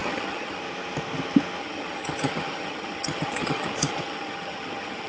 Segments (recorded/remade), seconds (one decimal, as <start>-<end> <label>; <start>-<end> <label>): 0.0-0.6 remade; 0.6-1.6 recorded; 1.6-5.1 remade